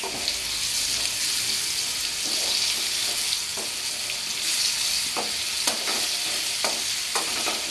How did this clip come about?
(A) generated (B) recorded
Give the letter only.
B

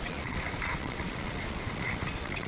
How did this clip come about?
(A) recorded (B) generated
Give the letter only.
B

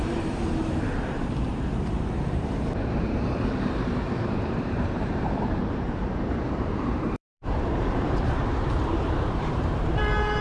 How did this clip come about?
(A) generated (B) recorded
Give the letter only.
A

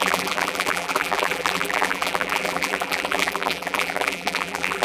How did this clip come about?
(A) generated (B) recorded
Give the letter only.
A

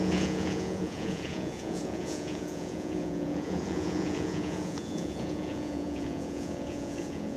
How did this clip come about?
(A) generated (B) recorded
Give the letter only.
A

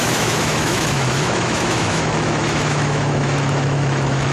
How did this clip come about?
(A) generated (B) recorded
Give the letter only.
A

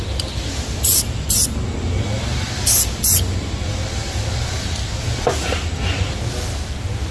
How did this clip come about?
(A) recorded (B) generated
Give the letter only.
A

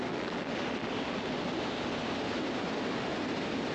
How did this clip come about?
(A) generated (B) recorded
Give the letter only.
B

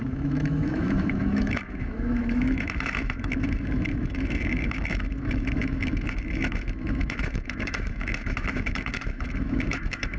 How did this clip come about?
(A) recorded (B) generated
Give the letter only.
B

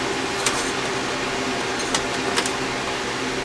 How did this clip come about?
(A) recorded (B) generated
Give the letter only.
A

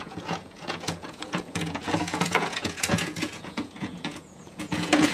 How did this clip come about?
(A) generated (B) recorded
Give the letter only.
A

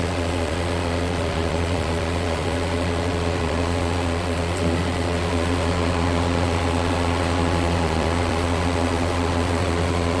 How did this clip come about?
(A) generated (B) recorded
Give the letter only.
A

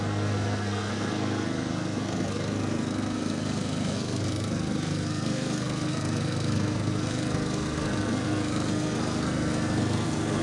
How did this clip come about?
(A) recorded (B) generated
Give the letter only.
B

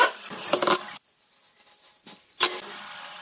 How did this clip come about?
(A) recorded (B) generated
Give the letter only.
A